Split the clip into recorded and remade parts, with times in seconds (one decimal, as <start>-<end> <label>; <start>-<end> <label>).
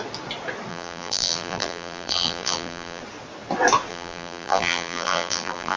0.0-0.7 recorded; 0.7-3.0 remade; 3.0-3.9 recorded; 3.9-5.8 remade